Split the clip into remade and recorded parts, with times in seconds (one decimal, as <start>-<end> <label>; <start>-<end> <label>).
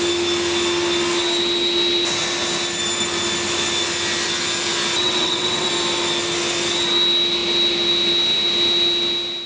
0.0-5.0 recorded; 5.0-5.7 remade; 5.7-9.5 recorded